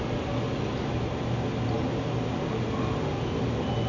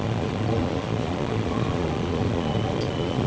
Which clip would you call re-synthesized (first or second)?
second